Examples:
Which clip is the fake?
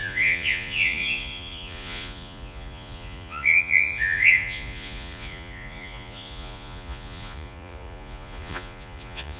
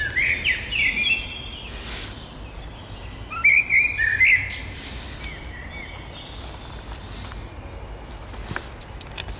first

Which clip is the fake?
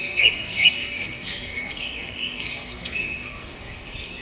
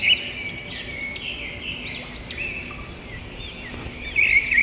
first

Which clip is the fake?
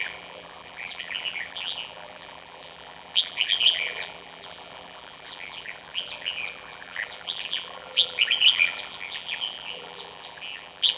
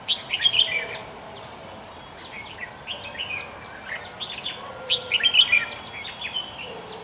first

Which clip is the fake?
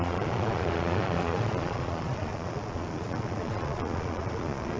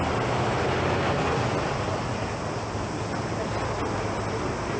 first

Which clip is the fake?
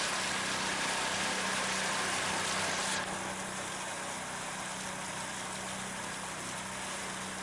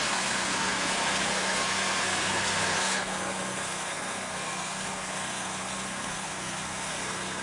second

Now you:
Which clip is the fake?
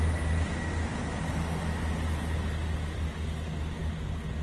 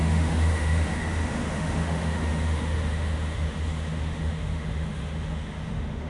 second